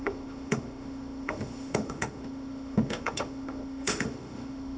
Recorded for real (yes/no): no